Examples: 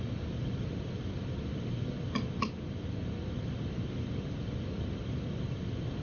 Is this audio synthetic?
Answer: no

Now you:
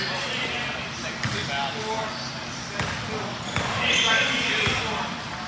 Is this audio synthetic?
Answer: no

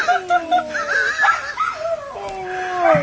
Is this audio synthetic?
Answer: no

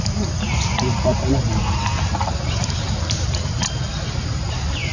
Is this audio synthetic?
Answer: no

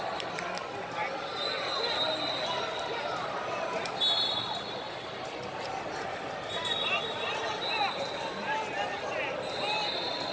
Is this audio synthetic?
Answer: no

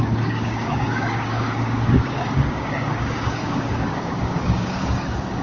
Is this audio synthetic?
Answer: yes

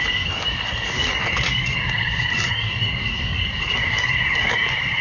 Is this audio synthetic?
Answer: yes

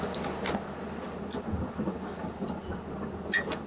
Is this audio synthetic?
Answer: no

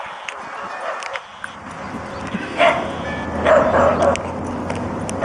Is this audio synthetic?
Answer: no